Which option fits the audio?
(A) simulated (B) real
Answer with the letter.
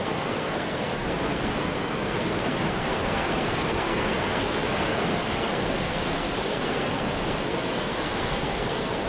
A